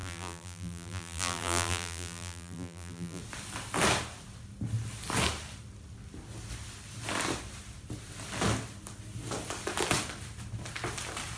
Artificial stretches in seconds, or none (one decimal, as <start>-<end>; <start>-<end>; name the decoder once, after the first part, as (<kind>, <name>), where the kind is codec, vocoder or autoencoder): 0.0-3.2 (vocoder, BigVGAN v2)